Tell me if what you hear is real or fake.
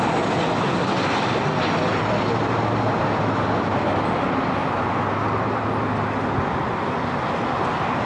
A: real